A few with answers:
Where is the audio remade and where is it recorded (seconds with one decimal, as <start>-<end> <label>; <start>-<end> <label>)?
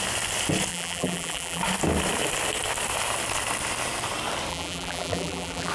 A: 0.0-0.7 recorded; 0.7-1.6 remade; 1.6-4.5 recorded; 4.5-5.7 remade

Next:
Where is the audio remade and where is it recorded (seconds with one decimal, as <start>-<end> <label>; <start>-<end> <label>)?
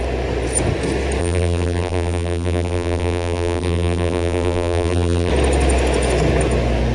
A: 0.0-1.2 recorded; 1.2-5.3 remade; 5.3-6.9 recorded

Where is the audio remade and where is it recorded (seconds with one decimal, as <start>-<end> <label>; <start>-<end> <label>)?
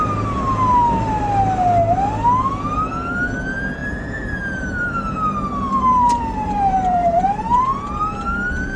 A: 0.0-3.8 recorded; 3.8-7.6 remade; 7.6-8.8 recorded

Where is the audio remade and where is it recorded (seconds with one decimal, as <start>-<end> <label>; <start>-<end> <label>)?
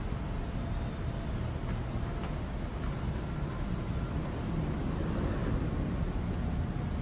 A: 0.0-7.0 recorded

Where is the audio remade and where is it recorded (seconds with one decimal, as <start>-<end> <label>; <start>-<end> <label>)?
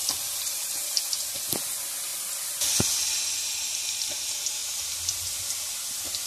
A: 0.0-0.5 remade; 0.5-2.1 recorded; 2.1-2.6 remade; 2.6-4.6 recorded; 4.6-5.3 remade; 5.3-6.3 recorded